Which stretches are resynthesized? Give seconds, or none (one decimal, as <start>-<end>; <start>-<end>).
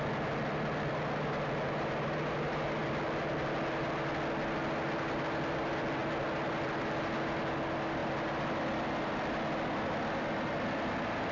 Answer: none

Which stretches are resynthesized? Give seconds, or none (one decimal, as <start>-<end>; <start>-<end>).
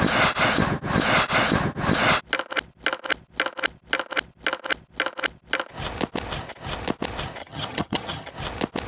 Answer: 7.4-8.3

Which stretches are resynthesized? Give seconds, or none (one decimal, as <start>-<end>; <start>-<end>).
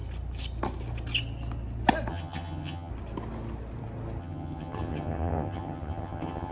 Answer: 2.1-2.9; 4.2-6.5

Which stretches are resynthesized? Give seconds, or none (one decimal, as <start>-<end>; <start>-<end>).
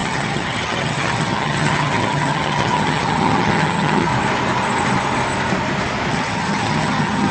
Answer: 0.0-4.1; 6.1-7.3